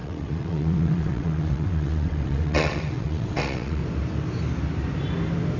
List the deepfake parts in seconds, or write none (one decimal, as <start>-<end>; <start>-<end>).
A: 0.0-3.8